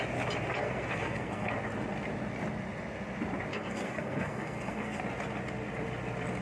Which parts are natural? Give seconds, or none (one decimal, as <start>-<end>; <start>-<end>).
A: 0.0-0.6; 1.5-3.5; 5.0-6.4